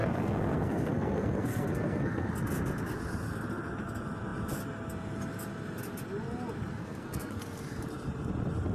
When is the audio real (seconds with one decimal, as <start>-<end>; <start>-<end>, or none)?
2.3-6.8; 7.4-8.7